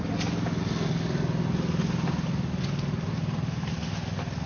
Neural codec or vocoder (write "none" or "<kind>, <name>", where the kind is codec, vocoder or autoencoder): none